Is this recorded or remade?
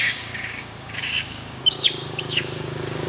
remade